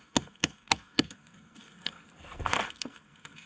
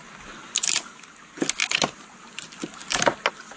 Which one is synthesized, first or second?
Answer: first